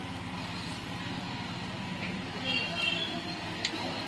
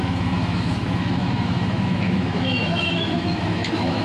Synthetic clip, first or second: second